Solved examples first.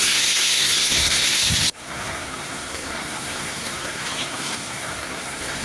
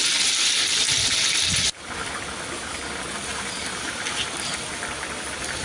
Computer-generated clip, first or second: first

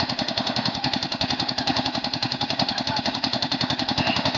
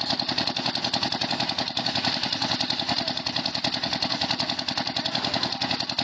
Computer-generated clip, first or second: first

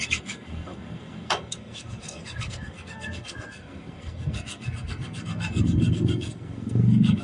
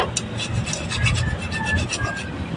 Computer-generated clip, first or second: first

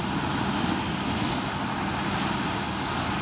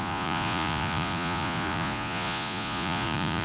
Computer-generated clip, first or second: second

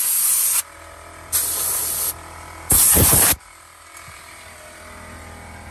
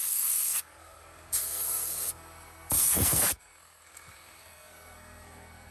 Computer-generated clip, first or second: second